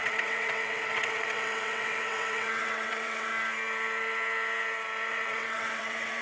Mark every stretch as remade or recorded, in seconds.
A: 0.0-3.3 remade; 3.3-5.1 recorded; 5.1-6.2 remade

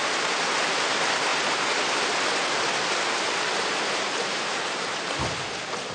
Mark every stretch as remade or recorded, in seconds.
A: 0.0-5.9 recorded

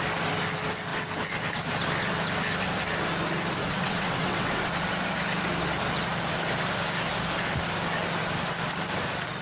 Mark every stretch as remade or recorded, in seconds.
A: 0.0-3.6 recorded; 3.6-4.7 remade; 4.7-9.4 recorded

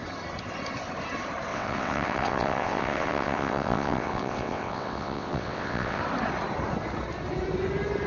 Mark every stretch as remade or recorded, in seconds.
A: 0.0-1.5 recorded; 1.5-6.0 remade; 6.0-8.1 recorded

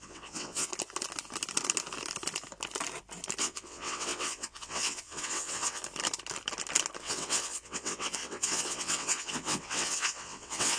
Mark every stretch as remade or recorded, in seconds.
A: 0.0-0.7 remade; 0.7-3.4 recorded; 3.4-5.8 remade; 5.8-7.0 recorded; 7.0-10.8 remade

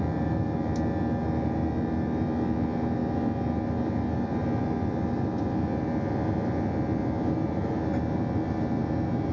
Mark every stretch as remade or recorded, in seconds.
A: 0.0-9.3 recorded

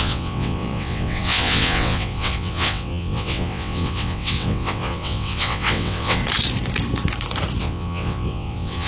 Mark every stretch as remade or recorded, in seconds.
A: 0.0-6.2 remade; 6.2-7.6 recorded; 7.6-8.9 remade